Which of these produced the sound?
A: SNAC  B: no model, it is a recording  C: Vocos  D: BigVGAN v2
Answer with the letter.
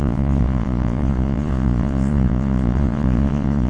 C